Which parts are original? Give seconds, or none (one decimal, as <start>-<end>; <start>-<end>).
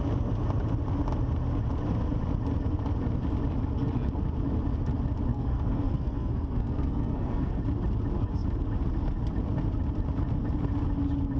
0.0-5.3; 7.6-11.4